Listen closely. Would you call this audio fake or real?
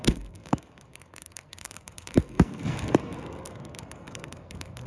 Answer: fake